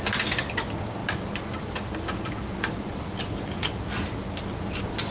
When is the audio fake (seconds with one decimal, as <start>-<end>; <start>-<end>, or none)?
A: none

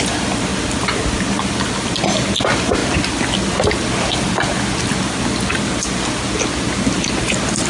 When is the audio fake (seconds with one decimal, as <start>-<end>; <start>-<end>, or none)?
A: 0.0-0.5; 2.4-2.8